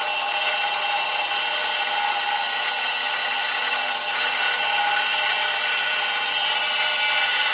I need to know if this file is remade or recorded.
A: recorded